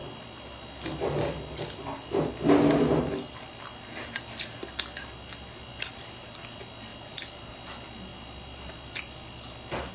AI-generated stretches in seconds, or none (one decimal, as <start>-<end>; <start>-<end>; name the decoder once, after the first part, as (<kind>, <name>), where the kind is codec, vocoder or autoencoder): none